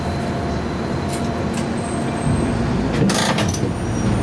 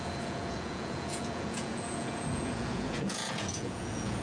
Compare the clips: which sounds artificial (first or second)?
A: second